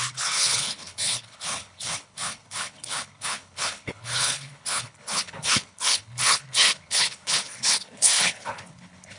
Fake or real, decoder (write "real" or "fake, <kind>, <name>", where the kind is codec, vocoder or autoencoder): fake, codec, HILCodec